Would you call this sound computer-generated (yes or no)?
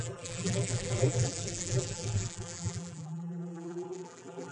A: yes